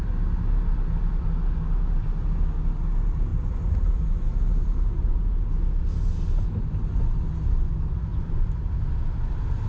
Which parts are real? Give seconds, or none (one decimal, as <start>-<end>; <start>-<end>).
0.0-3.3; 5.4-8.1